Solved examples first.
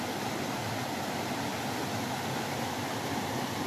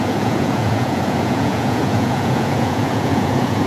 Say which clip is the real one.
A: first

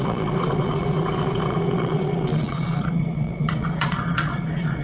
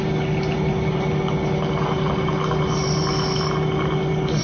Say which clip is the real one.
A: second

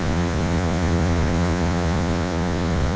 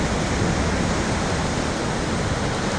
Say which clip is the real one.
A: second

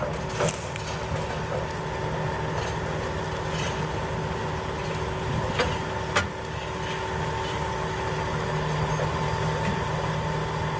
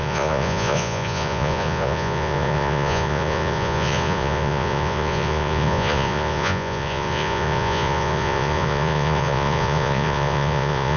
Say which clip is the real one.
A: first